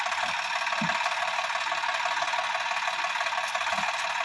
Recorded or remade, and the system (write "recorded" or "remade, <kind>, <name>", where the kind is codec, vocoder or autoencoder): recorded